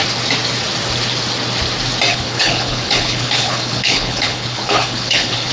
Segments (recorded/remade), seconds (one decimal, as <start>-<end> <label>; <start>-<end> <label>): 0.0-2.1 recorded; 2.1-5.5 remade